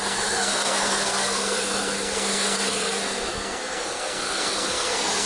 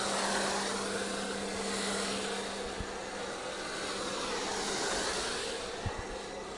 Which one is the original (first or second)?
second